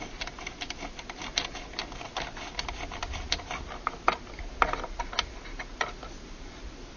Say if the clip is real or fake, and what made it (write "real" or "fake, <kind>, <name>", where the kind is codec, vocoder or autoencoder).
real